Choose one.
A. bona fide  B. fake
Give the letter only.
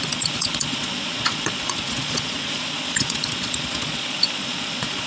B